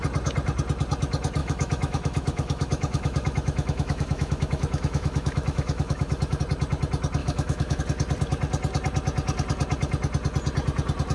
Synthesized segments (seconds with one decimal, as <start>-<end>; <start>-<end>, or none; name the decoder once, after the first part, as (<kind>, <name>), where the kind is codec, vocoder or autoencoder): 1.4-6.4 (autoencoder, DAC-VAE); 7.2-7.8